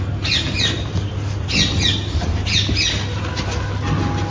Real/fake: real